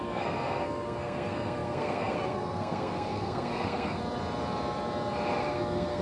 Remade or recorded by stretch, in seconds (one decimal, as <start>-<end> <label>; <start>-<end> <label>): 0.0-4.0 remade; 4.0-5.4 recorded; 5.4-6.0 remade